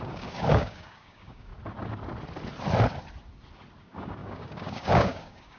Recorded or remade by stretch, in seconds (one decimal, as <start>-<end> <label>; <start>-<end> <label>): 0.0-1.5 remade; 1.5-3.8 recorded; 3.8-5.6 remade